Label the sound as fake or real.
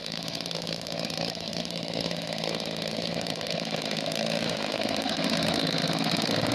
fake